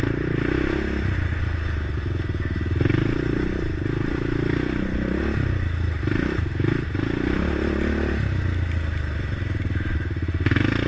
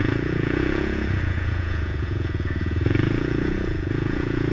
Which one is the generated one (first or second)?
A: second